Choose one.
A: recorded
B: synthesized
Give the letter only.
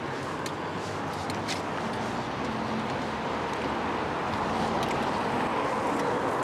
A